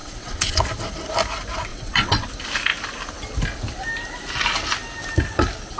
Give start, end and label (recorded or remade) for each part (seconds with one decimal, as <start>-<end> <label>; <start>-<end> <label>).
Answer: 0.0-0.6 remade; 0.6-1.7 recorded; 1.7-2.3 remade; 2.3-5.8 recorded

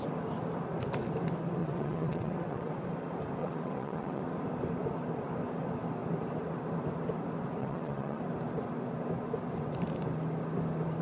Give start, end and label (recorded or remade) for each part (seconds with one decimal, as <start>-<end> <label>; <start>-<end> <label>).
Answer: 0.0-1.6 recorded; 1.6-2.7 remade; 2.7-3.4 recorded; 3.4-4.2 remade; 4.2-7.6 recorded; 7.6-8.2 remade; 8.2-11.0 recorded

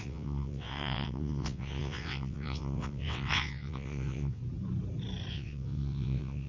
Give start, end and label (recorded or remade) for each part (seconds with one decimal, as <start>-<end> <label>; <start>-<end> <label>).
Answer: 0.0-4.4 remade; 4.4-5.3 recorded; 5.3-6.5 remade

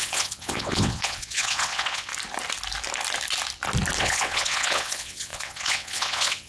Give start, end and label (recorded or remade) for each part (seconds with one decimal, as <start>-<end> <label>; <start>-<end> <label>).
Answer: 0.0-2.1 remade; 2.1-4.0 recorded; 4.0-6.5 remade